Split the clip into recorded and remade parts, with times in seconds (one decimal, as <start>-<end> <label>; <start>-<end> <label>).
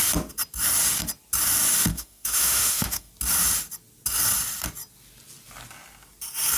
0.0-1.9 recorded; 1.9-3.1 remade; 3.1-6.6 recorded